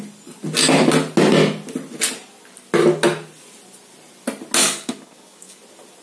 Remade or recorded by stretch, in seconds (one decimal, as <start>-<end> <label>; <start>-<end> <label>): 0.0-4.6 recorded; 4.6-5.6 remade; 5.6-6.0 recorded